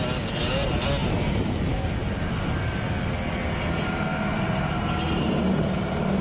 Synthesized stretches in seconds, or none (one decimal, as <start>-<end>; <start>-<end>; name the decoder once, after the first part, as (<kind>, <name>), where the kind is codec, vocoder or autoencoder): none